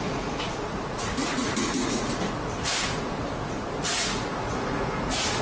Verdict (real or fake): fake